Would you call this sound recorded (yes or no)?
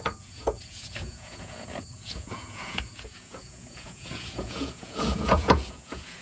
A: no